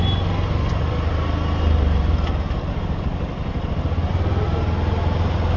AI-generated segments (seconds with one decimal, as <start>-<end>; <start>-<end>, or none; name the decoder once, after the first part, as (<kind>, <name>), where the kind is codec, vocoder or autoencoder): none